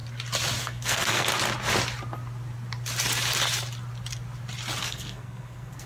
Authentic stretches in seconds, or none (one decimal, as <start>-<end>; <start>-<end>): 0.0-0.6; 1.3-4.8